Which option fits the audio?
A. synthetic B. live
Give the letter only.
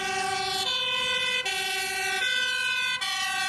B